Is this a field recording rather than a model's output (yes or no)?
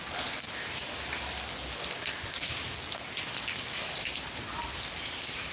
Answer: yes